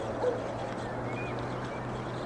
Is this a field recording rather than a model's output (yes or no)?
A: yes